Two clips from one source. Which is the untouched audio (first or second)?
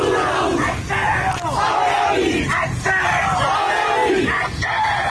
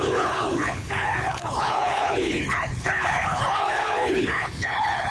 first